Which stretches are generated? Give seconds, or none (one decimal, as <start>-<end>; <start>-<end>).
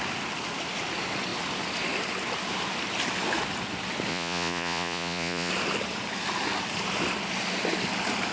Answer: 4.1-5.5